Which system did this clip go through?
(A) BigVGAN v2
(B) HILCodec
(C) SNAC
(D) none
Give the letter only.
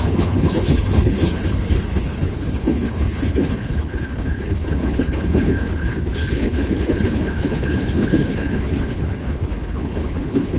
B